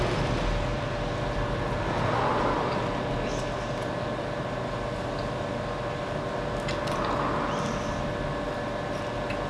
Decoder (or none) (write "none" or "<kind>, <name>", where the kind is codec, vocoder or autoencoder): none